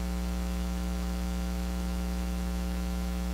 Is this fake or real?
fake